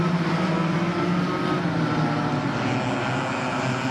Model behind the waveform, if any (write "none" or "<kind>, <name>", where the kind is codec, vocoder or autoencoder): none